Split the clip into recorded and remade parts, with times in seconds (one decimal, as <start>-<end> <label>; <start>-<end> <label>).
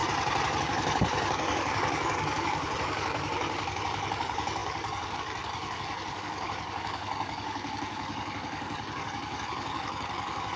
0.0-0.6 recorded; 0.6-10.6 remade